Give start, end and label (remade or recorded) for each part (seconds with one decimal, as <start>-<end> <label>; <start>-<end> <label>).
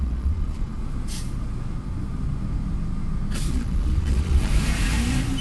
0.0-0.8 remade; 0.8-3.5 recorded; 3.5-4.5 remade; 4.5-5.4 recorded